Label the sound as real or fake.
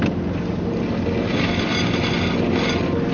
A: real